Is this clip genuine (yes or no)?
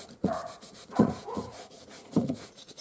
no